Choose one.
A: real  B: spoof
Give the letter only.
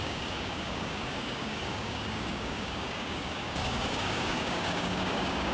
B